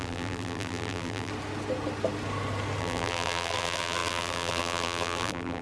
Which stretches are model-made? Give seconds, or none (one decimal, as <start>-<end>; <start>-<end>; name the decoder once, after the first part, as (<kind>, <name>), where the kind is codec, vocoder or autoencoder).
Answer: 0.0-1.3 (vocoder, BigVGAN v2); 2.8-5.6